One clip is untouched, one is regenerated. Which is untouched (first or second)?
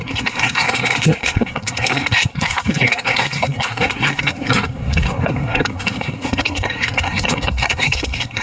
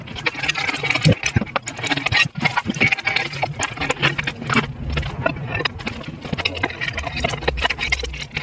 second